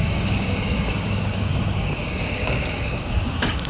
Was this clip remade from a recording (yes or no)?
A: yes